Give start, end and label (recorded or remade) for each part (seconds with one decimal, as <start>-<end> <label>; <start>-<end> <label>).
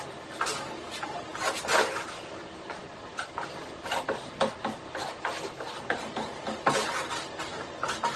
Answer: 0.0-8.2 recorded